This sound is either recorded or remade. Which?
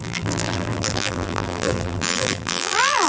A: remade